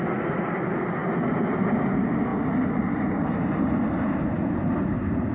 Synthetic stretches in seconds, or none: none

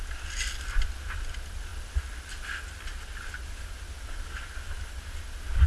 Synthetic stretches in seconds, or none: none

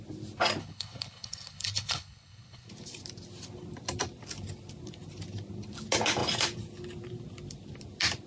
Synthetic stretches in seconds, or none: 0.6-2.7 (codec, HILCodec)

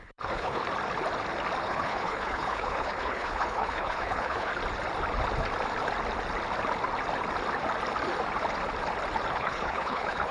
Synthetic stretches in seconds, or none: 0.0-0.6 (codec, HILCodec); 1.6-4.5; 9.3-10.3

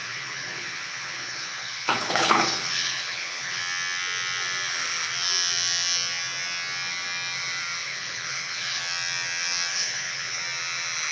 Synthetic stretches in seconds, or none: 0.0-3.6 (codec, HILCodec); 7.8-8.8; 9.7-10.4

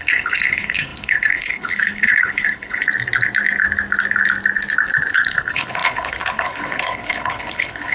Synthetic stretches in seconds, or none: 0.0-2.8 (codec, HILCodec); 5.1-7.9

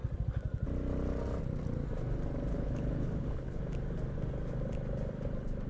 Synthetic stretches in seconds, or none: 2.5-3.6 (codec, HILCodec)